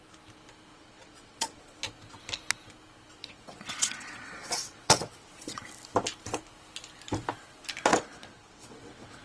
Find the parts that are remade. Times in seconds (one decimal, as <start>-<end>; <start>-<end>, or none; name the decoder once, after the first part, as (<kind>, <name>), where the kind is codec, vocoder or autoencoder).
0.7-1.8 (vocoder, WaveNeXt); 3.2-5.6; 7.9-9.2